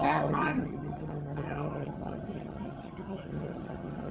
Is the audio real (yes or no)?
no